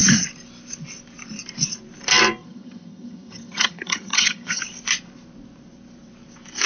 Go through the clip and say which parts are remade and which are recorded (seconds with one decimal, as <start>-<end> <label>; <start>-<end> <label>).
0.0-2.4 recorded; 2.4-4.6 remade; 4.6-6.7 recorded